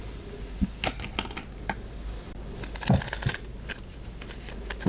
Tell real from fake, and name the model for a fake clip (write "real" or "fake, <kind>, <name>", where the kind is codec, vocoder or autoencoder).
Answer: real